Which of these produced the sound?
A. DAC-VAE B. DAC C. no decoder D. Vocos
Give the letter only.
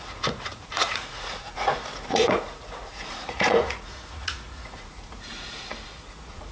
D